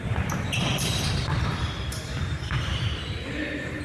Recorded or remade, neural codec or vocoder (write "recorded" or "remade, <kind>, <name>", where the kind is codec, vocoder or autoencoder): remade, vocoder, BigVGAN v2